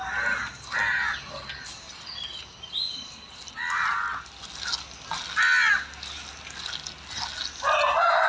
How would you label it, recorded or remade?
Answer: recorded